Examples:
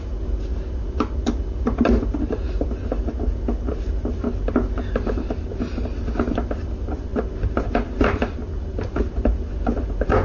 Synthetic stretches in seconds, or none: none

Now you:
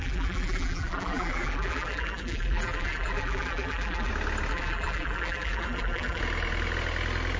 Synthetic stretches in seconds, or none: 0.0-4.1 (vocoder, BigVGAN v2); 4.5-6.2

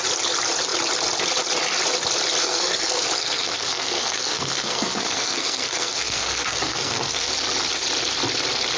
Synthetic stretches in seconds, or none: 2.4-7.3 (codec, SNAC)

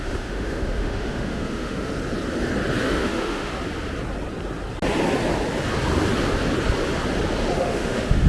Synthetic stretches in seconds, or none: 0.0-1.9 (autoencoder, DAC-VAE); 2.8-3.5; 7.6-8.3